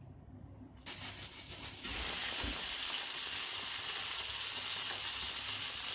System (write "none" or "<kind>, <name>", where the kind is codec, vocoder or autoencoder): none